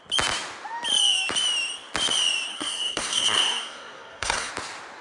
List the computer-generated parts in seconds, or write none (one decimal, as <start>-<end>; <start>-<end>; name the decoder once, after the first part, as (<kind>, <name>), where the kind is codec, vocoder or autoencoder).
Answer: 2.5-4.5 (codec, SNAC)